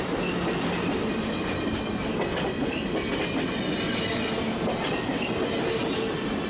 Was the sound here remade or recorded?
recorded